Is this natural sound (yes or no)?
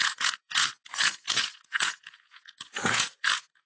no